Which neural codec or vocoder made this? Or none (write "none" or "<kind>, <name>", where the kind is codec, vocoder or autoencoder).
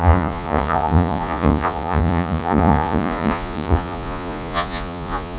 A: vocoder, Vocos